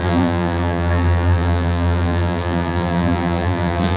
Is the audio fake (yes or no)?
yes